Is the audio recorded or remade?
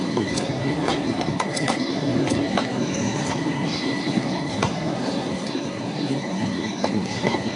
remade